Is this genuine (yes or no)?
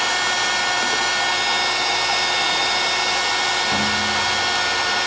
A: yes